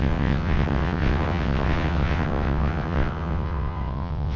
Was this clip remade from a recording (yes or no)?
yes